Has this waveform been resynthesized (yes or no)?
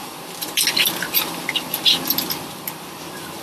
yes